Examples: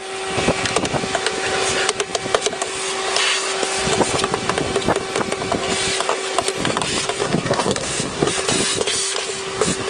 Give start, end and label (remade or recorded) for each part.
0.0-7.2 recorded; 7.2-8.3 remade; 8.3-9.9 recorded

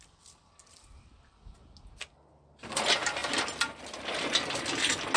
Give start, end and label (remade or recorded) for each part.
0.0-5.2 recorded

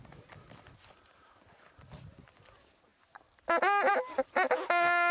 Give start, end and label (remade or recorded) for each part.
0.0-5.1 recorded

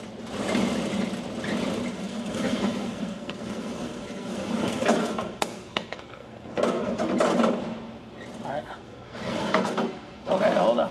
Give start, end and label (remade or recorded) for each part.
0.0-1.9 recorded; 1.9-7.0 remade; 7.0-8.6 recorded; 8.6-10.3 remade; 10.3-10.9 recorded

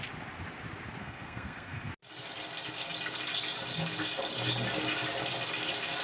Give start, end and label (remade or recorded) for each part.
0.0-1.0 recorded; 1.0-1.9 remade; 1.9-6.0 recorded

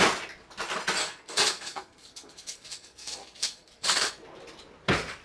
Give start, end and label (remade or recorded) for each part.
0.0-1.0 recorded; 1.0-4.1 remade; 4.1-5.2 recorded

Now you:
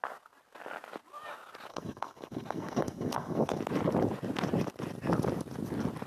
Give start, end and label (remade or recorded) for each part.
0.0-1.7 recorded; 1.7-3.6 remade; 3.6-6.1 recorded

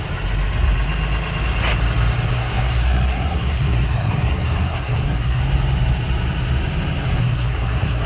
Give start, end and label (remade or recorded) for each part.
0.0-2.3 recorded; 2.3-5.4 remade; 5.4-7.2 recorded; 7.2-8.1 remade